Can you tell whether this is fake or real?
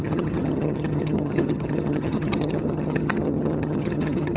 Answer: fake